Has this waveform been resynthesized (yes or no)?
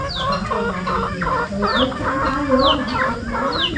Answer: no